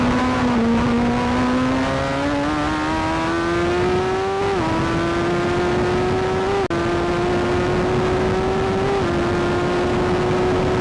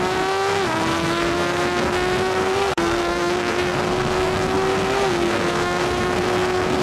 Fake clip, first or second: second